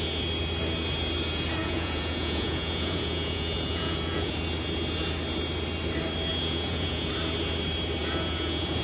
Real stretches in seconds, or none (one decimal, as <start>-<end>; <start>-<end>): 0.0-1.6; 4.3-6.3; 7.1-8.0